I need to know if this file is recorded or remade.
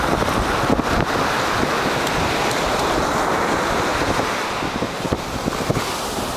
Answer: recorded